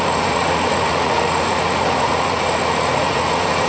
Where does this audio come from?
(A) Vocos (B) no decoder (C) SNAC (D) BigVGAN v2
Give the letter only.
A